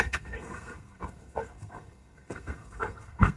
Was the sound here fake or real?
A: fake